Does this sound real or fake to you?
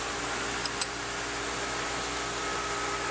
real